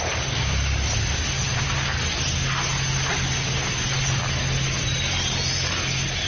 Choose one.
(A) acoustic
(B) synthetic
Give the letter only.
A